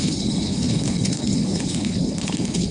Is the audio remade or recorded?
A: remade